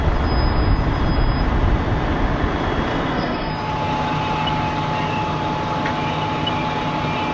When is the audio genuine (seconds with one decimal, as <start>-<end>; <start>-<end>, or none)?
0.0-2.9; 3.5-7.3

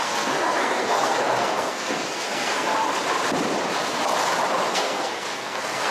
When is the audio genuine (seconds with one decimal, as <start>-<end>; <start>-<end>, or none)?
2.7-4.7